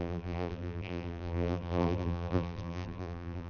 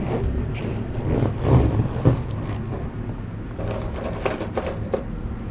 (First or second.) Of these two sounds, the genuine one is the second